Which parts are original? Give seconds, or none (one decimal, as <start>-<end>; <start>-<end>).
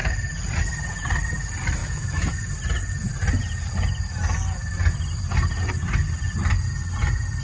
0.0-1.8; 2.3-7.4